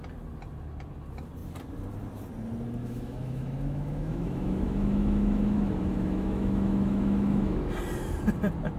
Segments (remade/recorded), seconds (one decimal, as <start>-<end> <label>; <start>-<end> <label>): 0.0-2.8 recorded; 2.8-7.7 remade; 7.7-8.8 recorded